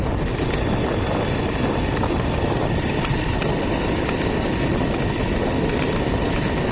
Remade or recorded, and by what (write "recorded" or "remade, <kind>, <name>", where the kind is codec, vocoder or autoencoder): recorded